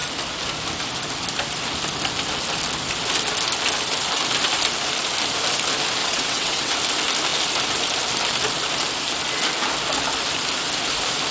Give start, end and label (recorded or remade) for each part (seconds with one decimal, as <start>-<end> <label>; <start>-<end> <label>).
0.0-6.0 recorded; 6.0-6.7 remade; 6.7-11.3 recorded